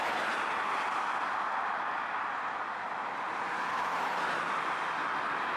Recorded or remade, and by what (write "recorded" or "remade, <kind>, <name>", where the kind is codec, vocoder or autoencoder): recorded